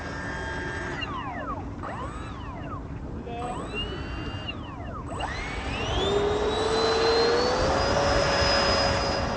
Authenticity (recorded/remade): recorded